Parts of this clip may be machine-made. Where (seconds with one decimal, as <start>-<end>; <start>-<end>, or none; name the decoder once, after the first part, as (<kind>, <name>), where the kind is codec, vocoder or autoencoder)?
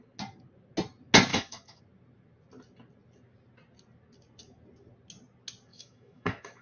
1.3-1.8 (autoencoder, DAC-VAE); 5.7-6.6